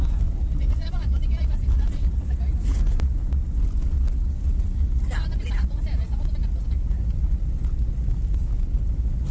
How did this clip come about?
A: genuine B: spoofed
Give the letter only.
A